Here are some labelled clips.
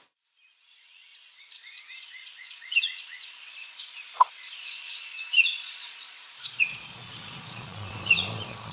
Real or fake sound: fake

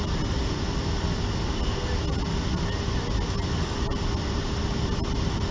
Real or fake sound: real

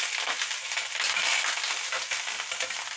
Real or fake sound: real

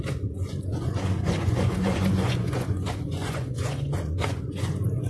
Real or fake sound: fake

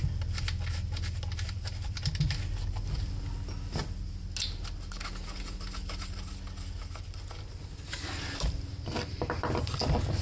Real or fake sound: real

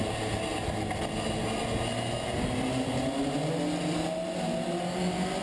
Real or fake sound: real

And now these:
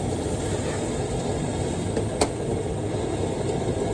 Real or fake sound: real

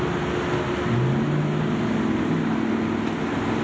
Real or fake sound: real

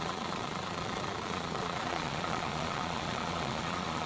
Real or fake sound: fake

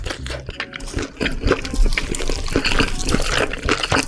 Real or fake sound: real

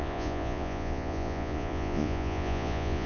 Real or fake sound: fake